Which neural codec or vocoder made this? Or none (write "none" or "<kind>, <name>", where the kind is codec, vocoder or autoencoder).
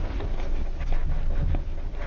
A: none